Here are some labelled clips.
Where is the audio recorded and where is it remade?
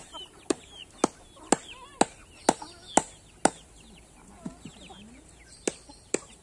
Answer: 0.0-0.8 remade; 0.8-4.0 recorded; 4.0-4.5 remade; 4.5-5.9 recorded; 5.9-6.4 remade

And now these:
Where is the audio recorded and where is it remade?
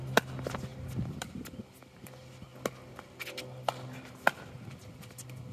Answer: 0.0-5.5 recorded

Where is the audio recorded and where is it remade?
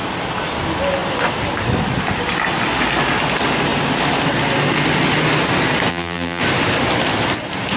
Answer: 0.0-5.9 recorded; 5.9-6.4 remade; 6.4-7.8 recorded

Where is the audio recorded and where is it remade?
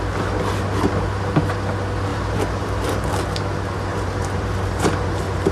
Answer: 0.0-2.1 recorded; 2.1-3.2 remade; 3.2-3.9 recorded; 3.9-5.5 remade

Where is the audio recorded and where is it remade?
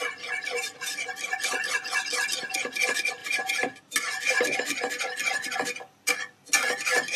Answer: 0.0-3.2 recorded; 3.2-3.8 remade; 3.8-7.2 recorded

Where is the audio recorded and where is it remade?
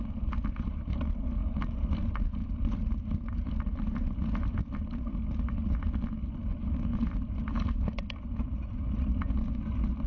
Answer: 0.0-1.4 recorded; 1.4-2.8 remade; 2.8-3.7 recorded; 3.7-4.6 remade; 4.6-6.5 recorded; 6.5-9.5 remade; 9.5-10.1 recorded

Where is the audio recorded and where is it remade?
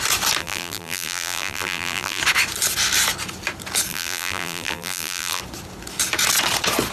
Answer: 0.0-0.4 recorded; 0.4-2.2 remade; 2.2-3.9 recorded; 3.9-5.4 remade; 5.4-6.9 recorded